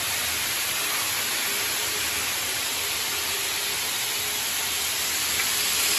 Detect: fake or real real